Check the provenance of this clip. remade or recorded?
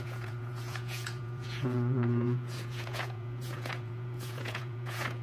remade